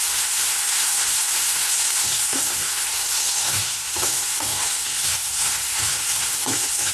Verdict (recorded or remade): remade